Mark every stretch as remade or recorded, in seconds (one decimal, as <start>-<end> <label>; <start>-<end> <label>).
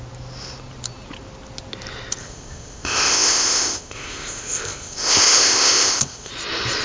0.0-2.2 recorded; 2.2-6.3 remade; 6.3-6.8 recorded